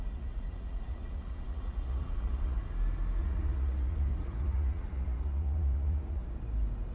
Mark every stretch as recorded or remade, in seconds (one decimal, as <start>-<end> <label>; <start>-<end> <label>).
0.0-2.6 remade; 2.6-3.2 recorded; 3.2-6.2 remade; 6.2-6.9 recorded